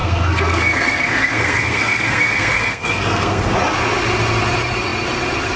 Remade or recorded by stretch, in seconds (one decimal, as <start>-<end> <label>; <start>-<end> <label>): 0.0-3.4 remade; 3.4-5.6 recorded